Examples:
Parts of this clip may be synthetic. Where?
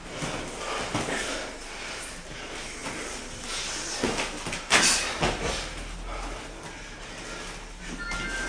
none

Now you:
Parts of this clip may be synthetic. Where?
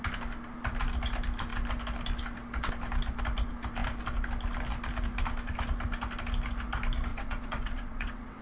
7.1-8.4 (vocoder, WaveNeXt)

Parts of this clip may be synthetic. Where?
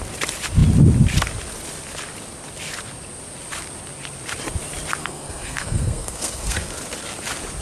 5.0-6.7 (codec, SNAC)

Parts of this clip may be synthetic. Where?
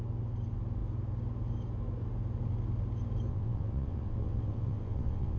3.3-5.4 (vocoder, WaveNeXt)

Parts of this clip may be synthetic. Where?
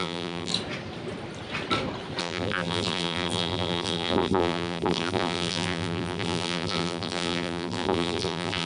0.0-0.5 (vocoder, BigVGAN v2); 2.2-8.7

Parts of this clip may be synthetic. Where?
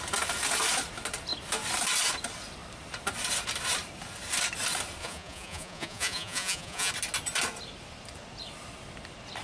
5.0-6.9 (vocoder, Vocos)